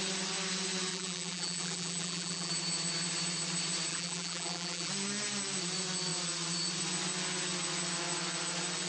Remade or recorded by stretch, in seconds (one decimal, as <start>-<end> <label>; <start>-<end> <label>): 0.0-0.9 recorded; 0.9-2.5 remade; 2.5-3.9 recorded; 3.9-4.9 remade; 4.9-8.9 recorded